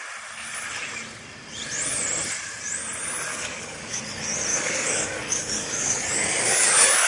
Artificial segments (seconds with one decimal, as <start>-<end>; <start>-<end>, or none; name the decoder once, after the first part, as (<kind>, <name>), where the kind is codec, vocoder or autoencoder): 3.3-4.0 (codec, DAC); 4.5-7.1